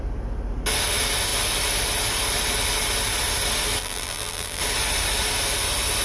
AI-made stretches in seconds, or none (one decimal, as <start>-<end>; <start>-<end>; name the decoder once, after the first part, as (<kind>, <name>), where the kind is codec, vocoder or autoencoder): 3.8-4.6 (vocoder, BigVGAN v2)